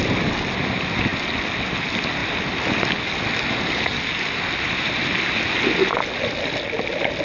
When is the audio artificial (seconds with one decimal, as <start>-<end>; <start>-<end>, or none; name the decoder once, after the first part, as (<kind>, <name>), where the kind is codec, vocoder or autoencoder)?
none